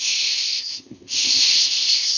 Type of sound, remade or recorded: remade